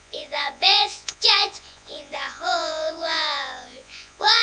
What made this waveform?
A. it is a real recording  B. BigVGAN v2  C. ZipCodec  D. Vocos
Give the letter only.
D